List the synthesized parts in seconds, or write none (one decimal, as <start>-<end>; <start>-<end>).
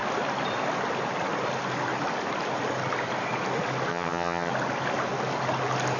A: 3.9-4.5